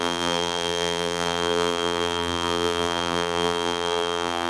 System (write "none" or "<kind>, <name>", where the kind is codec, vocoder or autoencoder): vocoder, BigVGAN v2